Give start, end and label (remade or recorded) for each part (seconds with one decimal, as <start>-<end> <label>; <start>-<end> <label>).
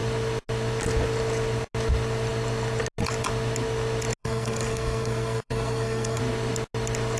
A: 0.0-4.2 recorded; 4.2-6.2 remade; 6.2-7.2 recorded